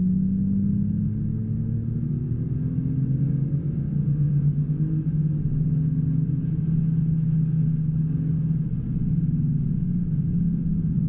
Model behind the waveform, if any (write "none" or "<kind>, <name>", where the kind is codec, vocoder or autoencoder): none